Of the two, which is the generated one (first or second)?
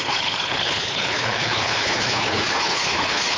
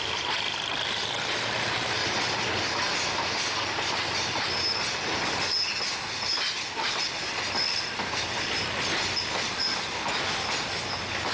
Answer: first